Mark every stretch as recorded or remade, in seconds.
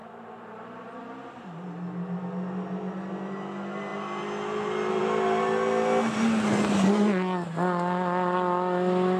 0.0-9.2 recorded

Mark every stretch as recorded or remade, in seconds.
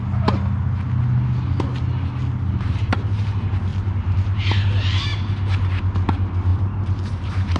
0.0-6.5 recorded; 6.5-7.6 remade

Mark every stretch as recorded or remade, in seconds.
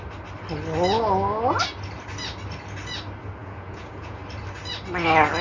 0.0-3.4 recorded; 3.4-4.2 remade; 4.2-5.4 recorded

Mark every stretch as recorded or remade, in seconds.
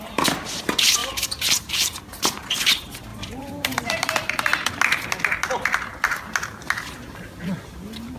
0.0-1.0 recorded; 1.0-2.0 remade; 2.0-3.1 recorded; 3.1-4.3 remade; 4.3-8.2 recorded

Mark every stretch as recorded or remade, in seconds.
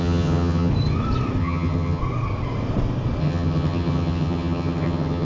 0.0-0.7 remade; 0.7-1.4 recorded; 1.4-2.0 remade; 2.0-3.2 recorded; 3.2-5.2 remade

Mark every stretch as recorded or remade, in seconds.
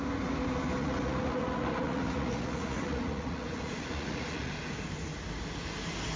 0.0-0.8 recorded; 0.8-4.5 remade; 4.5-6.2 recorded